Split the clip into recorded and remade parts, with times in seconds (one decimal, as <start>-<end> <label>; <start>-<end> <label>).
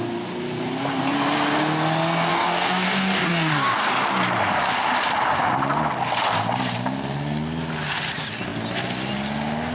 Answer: 0.0-2.3 recorded; 2.3-3.9 remade; 3.9-9.7 recorded